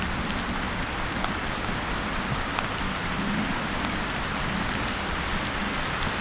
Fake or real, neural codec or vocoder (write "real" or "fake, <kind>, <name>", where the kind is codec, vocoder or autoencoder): real